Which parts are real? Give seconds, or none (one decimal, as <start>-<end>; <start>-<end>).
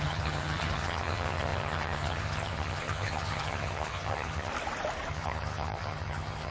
4.5-5.1